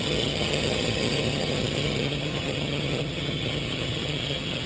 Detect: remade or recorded remade